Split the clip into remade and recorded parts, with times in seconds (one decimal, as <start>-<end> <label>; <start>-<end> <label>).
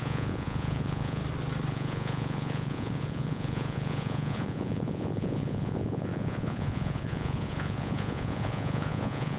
0.0-1.2 remade; 1.2-1.7 recorded; 1.7-9.4 remade